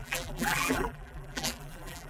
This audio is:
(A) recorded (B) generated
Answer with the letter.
B